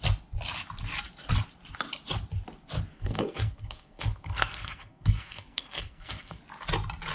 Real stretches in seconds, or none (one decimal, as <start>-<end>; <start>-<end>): 0.0-2.9; 6.4-7.1